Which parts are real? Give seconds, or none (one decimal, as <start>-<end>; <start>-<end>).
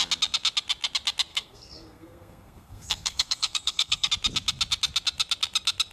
0.0-1.3; 4.1-5.9